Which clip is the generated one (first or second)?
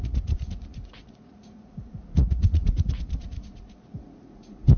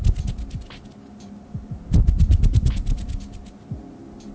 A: first